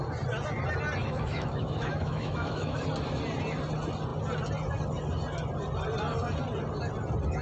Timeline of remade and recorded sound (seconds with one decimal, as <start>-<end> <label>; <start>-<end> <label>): 0.0-1.0 recorded; 1.0-2.8 remade; 2.8-7.4 recorded